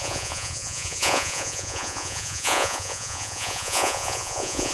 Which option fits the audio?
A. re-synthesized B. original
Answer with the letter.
A